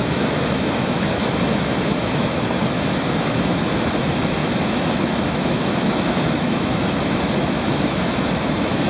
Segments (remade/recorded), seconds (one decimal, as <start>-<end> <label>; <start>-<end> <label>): 0.0-8.9 remade